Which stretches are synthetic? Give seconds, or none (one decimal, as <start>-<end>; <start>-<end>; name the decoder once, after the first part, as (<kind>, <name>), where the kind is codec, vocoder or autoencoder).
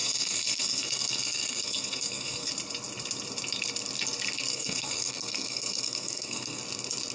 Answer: 0.0-2.5 (codec, SNAC); 4.5-6.6